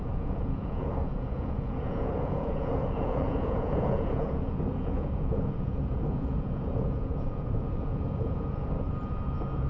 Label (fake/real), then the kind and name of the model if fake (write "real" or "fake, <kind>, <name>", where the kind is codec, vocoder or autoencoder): fake, vocoder, Vocos